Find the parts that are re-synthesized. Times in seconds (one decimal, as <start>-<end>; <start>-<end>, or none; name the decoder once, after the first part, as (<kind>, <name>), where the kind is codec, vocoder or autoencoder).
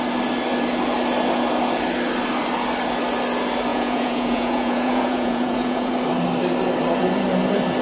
3.7-5.9 (vocoder, Vocos)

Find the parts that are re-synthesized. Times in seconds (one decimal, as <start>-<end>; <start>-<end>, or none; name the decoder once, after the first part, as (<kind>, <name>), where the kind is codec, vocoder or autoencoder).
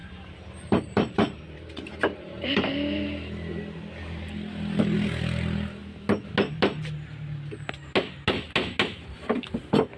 0.0-2.5 (vocoder, BigVGAN v2)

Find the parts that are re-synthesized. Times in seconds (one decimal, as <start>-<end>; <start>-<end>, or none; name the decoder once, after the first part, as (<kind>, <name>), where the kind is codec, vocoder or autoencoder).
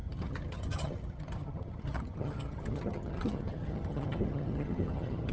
0.0-5.3 (vocoder, HiFi-GAN)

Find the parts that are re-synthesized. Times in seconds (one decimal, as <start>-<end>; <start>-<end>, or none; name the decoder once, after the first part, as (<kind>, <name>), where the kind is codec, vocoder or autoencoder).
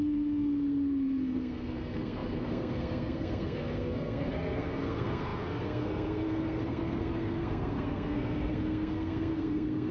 0.0-9.9 (codec, SNAC)